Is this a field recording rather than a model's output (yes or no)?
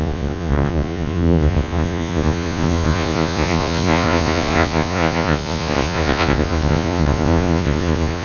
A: no